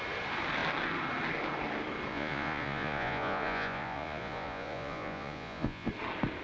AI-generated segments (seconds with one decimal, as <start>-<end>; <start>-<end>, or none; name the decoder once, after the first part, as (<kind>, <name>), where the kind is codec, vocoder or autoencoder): 2.1-5.9 (vocoder, Vocos)

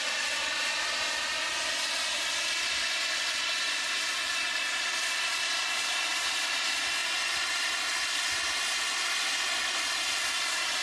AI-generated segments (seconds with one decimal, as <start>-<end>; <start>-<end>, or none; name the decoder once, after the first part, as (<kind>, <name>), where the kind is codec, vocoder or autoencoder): none

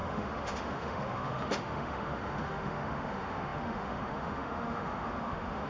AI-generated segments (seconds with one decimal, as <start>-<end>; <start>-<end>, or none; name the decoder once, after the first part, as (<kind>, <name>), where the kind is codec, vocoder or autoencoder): 0.0-5.7 (autoencoder, DAC-VAE)

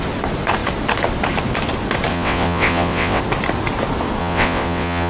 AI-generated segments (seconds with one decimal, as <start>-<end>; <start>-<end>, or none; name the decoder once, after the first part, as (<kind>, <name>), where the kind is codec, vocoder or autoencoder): 2.1-3.2 (vocoder, WaveNeXt); 4.2-5.1

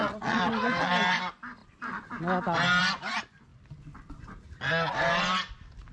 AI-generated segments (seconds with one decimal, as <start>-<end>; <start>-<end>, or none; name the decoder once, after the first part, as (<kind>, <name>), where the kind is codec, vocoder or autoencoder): 0.0-0.9 (vocoder, WaveNeXt)

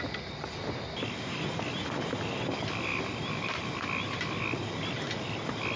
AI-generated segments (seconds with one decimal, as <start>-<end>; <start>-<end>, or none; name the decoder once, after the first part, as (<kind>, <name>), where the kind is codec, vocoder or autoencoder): none